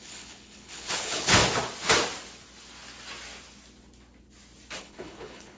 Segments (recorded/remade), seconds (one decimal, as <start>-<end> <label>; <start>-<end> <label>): 0.0-1.4 remade; 1.4-4.8 recorded; 4.8-5.6 remade